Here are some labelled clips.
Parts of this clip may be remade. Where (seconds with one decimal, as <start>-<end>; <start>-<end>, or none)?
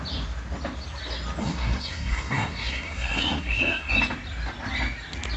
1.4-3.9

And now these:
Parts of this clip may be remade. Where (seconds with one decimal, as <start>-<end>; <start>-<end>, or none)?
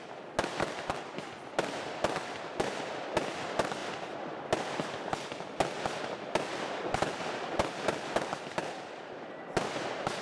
none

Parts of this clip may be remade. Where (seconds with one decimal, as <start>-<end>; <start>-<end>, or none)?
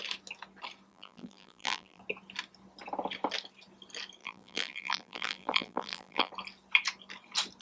0.9-2.0; 4.2-6.3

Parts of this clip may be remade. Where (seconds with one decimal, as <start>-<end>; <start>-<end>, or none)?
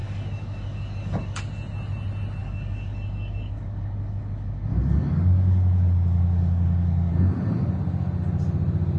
0.0-1.4; 2.4-7.1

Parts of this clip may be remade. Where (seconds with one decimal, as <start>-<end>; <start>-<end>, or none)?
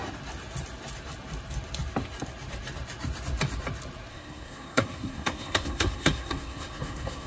4.1-7.3